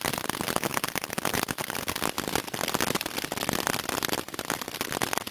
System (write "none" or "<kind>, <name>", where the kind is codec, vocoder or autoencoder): none